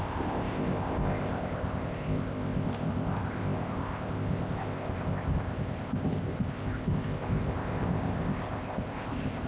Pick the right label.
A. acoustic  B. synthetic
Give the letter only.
B